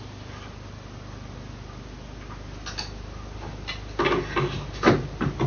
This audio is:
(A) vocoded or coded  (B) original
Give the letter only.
B